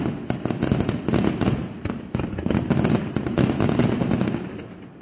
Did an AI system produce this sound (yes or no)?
no